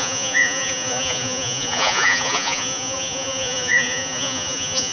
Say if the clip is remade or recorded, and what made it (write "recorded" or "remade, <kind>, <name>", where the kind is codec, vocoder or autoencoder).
remade, vocoder, Vocos